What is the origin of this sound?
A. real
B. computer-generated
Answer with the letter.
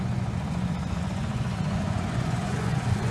B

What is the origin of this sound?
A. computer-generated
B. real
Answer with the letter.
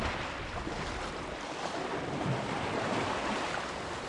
B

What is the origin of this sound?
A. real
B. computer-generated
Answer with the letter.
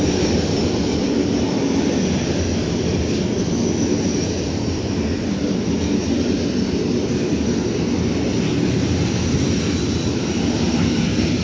A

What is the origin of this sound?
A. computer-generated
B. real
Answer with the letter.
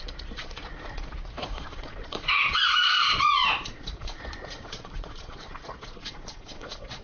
A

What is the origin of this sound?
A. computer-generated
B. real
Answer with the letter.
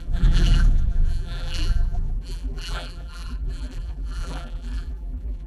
A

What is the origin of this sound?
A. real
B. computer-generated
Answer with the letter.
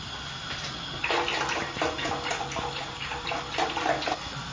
A